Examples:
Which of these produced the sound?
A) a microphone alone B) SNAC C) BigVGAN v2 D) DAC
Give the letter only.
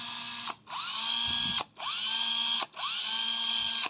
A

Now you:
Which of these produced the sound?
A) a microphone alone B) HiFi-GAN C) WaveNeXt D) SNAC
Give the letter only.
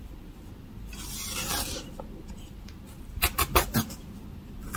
A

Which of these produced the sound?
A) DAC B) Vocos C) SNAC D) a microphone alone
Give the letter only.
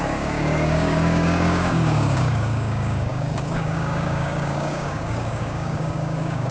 A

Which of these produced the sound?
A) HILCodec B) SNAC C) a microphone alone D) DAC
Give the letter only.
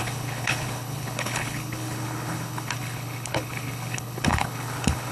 A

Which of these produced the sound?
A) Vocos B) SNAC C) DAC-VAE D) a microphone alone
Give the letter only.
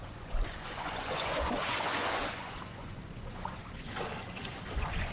A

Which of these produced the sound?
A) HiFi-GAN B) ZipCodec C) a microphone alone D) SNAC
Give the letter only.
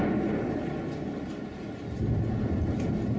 C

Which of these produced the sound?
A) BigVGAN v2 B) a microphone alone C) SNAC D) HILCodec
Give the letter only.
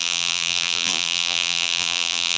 A